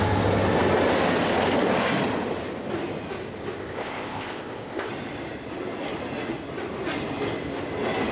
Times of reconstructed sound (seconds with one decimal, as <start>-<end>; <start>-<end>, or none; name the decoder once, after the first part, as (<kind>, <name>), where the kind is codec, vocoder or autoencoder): 3.6-4.9 (codec, ZipCodec)